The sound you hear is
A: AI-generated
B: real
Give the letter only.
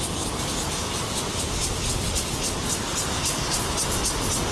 B